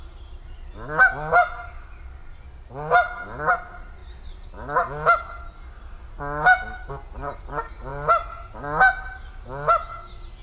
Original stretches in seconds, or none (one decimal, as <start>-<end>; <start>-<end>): 0.0-10.4